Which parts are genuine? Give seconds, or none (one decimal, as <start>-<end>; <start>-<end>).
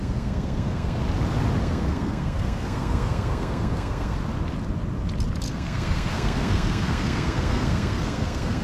1.0-1.6; 4.2-5.5